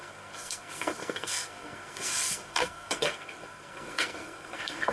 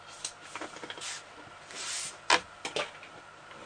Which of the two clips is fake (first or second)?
first